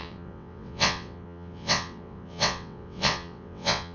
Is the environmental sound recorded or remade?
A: remade